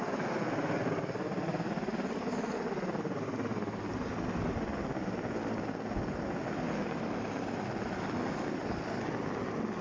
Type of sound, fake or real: real